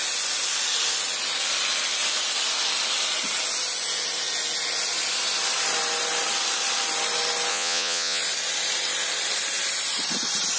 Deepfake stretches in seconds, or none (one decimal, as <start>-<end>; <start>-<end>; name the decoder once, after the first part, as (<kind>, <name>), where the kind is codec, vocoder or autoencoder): 7.5-8.2 (vocoder, Vocos)